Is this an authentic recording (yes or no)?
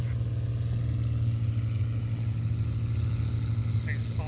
yes